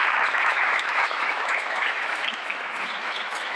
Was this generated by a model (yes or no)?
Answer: yes